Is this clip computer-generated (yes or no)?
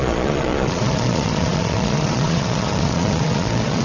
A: yes